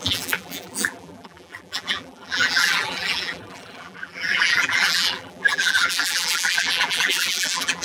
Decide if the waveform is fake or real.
fake